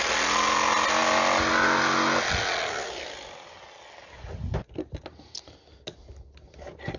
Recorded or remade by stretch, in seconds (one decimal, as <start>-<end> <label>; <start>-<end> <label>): 0.0-7.0 recorded

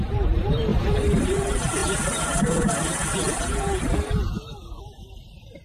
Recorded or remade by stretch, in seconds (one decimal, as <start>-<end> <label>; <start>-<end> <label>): 0.0-1.8 remade; 1.8-4.4 recorded; 4.4-5.6 remade

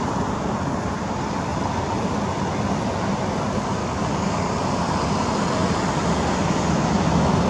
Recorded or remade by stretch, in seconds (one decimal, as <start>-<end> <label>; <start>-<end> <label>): 0.0-3.8 recorded; 3.8-4.5 remade; 4.5-7.5 recorded

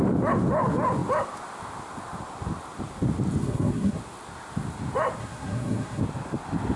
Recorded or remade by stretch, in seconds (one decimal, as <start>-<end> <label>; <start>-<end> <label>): 0.0-3.4 recorded; 3.4-4.0 remade; 4.0-5.2 recorded; 5.2-6.0 remade; 6.0-6.8 recorded

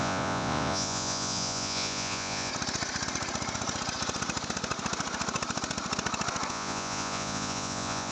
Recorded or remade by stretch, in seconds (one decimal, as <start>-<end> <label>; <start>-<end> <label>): 0.0-2.5 remade; 2.5-6.5 recorded; 6.5-8.1 remade